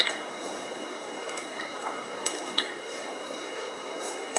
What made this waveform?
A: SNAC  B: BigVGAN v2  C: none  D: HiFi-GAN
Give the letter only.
A